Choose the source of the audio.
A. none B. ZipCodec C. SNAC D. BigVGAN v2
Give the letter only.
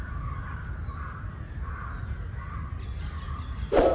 A